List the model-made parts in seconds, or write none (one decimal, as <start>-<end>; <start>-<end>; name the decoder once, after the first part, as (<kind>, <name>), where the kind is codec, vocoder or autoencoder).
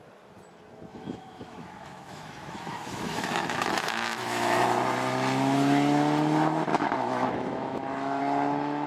0.9-4.6 (autoencoder, DAC-VAE); 6.7-8.2